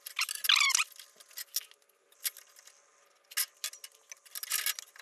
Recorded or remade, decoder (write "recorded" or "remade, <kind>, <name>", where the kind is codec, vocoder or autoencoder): recorded